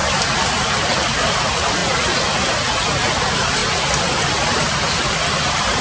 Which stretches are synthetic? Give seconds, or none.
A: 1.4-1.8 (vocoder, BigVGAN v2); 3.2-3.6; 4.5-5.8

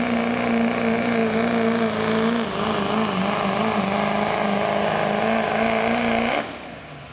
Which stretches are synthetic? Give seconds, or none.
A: none

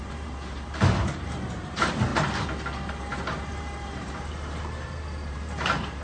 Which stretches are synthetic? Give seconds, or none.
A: 0.0-2.1 (vocoder, BigVGAN v2); 2.9-6.0

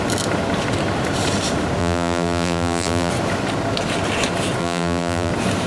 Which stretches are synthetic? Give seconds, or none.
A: 1.8-3.1 (vocoder, BigVGAN v2); 4.6-5.3

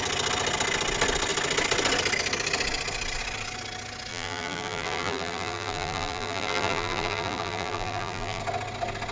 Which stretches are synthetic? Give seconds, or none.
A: 4.1-8.4 (vocoder, BigVGAN v2)

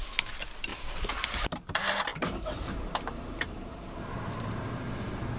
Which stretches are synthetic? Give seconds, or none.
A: 0.7-1.5 (vocoder, BigVGAN v2); 2.1-4.9

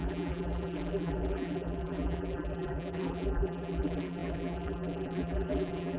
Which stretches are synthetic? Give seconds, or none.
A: 0.0-6.0 (vocoder, BigVGAN v2)